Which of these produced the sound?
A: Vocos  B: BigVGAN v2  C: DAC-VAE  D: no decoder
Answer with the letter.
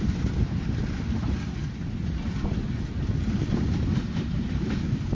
B